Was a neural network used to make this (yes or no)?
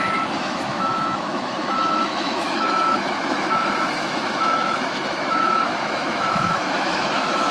yes